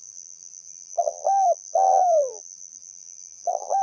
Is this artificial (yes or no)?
yes